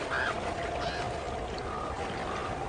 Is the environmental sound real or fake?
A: real